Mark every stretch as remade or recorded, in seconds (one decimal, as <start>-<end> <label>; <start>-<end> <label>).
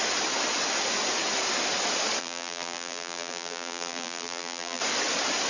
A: 0.0-2.2 recorded; 2.2-4.8 remade; 4.8-5.5 recorded